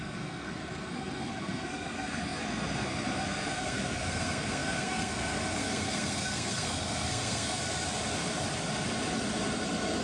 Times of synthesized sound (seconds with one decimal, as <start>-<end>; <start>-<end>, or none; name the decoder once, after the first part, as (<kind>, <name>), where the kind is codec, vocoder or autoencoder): 0.0-7.6 (codec, SNAC)